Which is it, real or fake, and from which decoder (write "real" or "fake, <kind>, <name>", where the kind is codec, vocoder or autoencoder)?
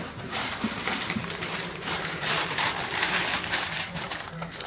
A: fake, vocoder, BigVGAN v2